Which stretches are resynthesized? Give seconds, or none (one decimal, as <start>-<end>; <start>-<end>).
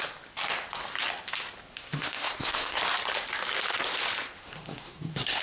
1.7-2.8; 4.4-5.4